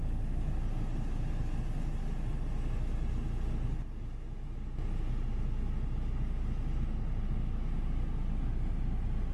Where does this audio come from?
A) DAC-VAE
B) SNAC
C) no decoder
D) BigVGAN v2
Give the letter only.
C